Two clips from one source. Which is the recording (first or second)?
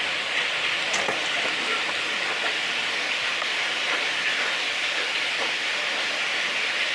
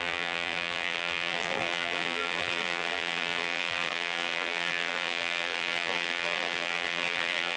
first